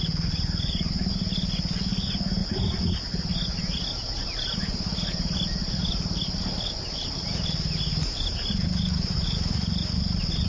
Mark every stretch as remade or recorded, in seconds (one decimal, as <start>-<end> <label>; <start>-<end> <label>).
0.0-5.6 recorded; 5.6-8.5 remade; 8.5-10.5 recorded